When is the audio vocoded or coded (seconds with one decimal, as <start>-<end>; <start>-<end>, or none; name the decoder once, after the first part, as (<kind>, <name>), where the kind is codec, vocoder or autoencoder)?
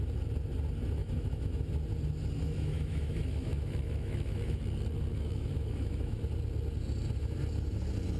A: 1.0-1.7 (autoencoder, DAC-VAE); 2.4-4.6; 5.1-6.2